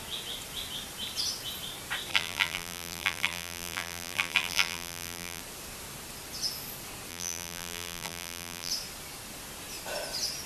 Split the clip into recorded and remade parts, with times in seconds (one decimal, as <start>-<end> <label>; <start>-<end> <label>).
0.0-2.1 recorded; 2.1-5.4 remade; 5.4-7.1 recorded; 7.1-8.7 remade; 8.7-10.5 recorded